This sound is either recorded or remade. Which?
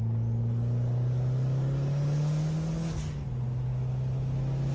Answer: recorded